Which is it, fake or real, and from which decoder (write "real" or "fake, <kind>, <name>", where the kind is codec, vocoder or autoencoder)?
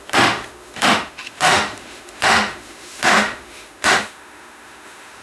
fake, autoencoder, DAC-VAE